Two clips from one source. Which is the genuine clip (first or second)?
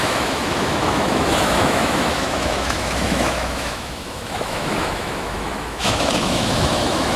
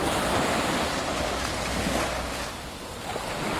second